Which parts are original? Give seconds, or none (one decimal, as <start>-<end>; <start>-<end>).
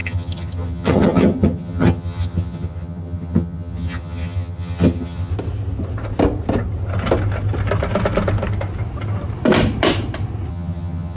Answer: 5.3-10.5